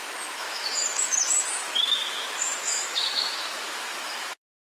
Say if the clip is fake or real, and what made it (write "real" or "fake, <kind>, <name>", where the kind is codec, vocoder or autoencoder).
fake, autoencoder, DAC-VAE